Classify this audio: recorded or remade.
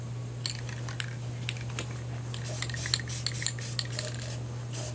recorded